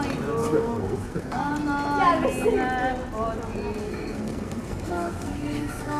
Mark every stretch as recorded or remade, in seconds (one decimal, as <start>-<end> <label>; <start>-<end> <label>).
0.0-0.4 recorded; 0.4-1.5 remade; 1.5-3.8 recorded; 3.8-6.0 remade